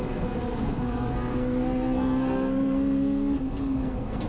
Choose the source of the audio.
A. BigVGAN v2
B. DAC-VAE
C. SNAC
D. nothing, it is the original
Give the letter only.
C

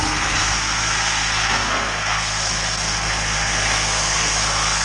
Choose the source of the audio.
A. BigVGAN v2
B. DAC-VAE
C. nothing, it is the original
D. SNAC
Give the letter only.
D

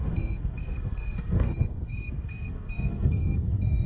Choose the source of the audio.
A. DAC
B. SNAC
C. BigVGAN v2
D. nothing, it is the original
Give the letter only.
B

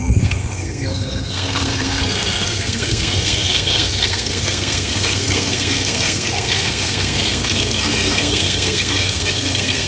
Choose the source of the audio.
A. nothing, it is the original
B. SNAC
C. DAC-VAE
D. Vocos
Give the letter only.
B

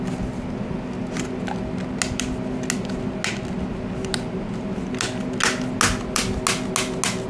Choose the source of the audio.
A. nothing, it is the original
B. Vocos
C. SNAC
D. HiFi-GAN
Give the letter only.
A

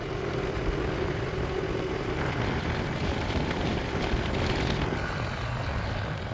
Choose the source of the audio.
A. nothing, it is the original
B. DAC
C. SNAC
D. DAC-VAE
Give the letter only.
A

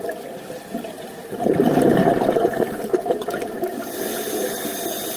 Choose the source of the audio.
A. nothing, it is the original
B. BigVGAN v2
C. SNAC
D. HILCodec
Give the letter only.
A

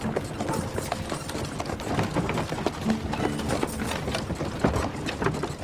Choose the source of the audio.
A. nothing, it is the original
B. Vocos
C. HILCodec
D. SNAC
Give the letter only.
A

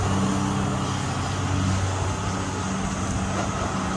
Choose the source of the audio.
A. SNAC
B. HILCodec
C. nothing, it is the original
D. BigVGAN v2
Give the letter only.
C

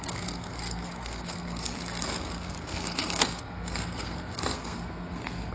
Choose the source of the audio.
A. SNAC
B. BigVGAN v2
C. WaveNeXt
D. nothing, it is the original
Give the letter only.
A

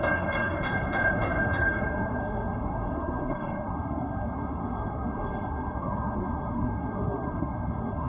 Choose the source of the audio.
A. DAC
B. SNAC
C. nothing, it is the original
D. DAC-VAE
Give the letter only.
B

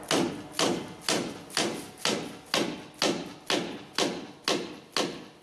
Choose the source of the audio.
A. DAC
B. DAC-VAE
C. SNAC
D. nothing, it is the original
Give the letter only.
D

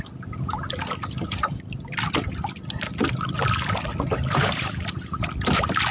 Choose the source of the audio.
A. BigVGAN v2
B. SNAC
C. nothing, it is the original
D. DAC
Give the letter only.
C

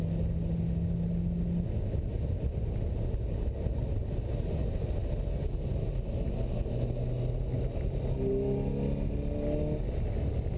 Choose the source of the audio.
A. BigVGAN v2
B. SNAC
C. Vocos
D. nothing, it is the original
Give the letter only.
D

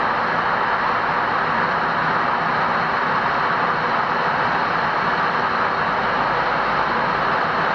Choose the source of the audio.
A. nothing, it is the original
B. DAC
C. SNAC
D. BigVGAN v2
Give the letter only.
A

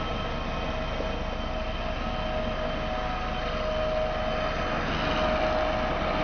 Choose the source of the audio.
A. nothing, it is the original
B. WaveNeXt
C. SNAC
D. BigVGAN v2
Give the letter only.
A